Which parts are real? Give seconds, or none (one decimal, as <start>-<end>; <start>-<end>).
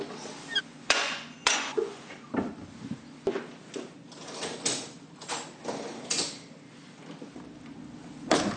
0.0-0.6; 2.3-8.6